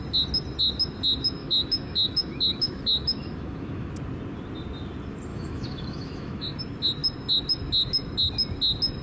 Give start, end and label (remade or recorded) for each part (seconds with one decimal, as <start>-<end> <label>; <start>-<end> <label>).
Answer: 0.0-1.4 recorded; 1.4-3.9 remade; 3.9-5.3 recorded; 5.3-6.6 remade; 6.6-9.0 recorded